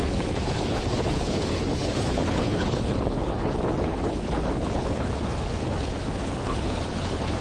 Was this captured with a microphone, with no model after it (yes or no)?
no